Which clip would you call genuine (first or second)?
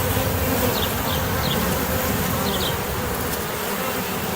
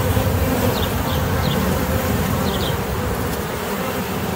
first